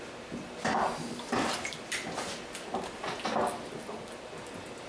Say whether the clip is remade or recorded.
recorded